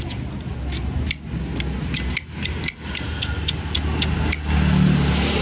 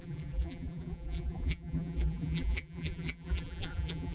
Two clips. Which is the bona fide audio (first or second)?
first